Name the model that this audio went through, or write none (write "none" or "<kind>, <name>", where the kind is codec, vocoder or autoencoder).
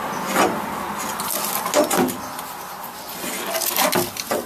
none